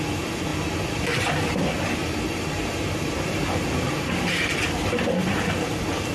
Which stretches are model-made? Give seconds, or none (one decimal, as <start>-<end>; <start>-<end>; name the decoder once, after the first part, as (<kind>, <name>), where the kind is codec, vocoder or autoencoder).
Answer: 0.5-1.5 (vocoder, BigVGAN v2); 2.0-6.1